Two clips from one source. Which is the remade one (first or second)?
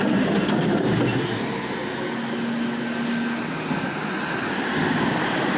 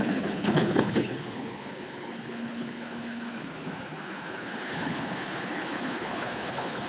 second